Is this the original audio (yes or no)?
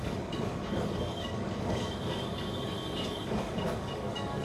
no